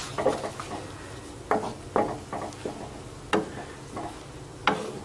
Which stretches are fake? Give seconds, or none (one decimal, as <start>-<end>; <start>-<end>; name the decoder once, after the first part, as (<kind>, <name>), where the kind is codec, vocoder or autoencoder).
none